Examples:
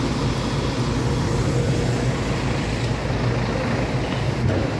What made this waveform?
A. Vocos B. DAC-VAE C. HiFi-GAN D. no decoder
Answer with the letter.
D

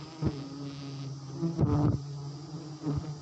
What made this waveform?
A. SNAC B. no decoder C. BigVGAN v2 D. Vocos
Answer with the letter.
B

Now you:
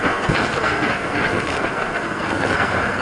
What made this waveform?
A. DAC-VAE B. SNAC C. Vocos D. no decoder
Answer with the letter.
B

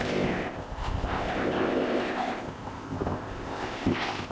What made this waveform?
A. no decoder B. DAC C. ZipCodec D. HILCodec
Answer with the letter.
C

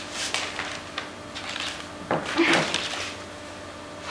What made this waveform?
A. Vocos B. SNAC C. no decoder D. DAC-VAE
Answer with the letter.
C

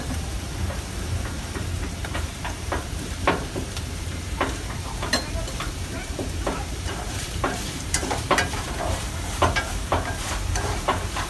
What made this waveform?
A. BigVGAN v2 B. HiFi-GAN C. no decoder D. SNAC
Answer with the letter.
A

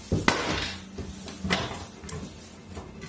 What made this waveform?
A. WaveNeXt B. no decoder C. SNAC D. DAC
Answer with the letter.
B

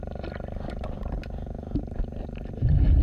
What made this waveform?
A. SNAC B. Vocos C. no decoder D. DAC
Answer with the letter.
C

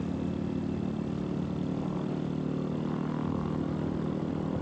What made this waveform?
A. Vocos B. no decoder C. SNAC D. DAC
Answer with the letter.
B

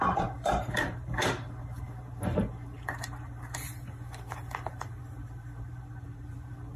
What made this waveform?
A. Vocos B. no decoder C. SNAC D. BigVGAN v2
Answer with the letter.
D